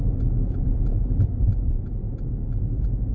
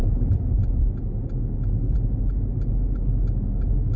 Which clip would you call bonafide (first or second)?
second